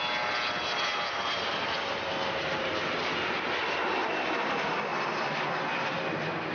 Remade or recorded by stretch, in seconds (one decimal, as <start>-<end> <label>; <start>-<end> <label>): 0.0-6.5 recorded